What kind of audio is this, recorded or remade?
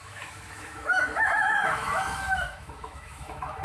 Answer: remade